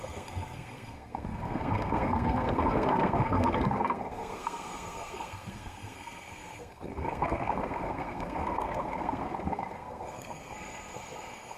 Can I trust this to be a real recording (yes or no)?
no